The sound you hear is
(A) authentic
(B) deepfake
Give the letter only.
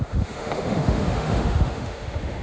B